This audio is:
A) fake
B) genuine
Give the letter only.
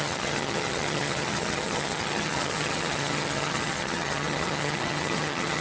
A